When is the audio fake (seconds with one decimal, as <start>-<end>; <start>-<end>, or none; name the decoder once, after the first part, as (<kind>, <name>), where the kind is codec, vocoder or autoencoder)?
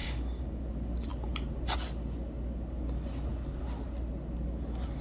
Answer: 0.0-0.6 (codec, DAC)